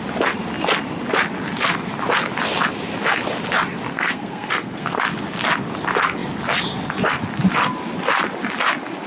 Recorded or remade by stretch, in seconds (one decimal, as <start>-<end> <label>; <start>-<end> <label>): 0.0-3.9 recorded; 3.9-5.0 remade; 5.0-9.1 recorded